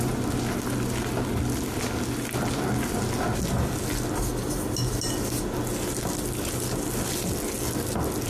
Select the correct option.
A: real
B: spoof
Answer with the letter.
A